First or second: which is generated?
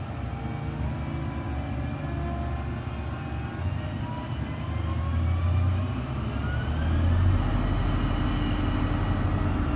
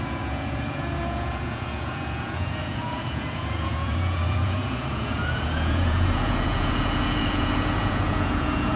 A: second